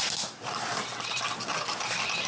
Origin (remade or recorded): recorded